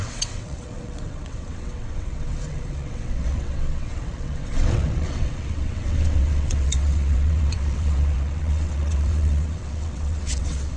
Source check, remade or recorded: remade